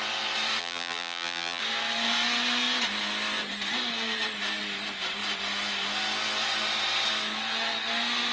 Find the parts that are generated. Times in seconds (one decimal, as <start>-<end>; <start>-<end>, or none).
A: 0.6-1.6